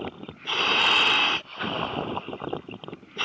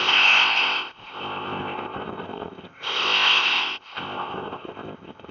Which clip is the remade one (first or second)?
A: second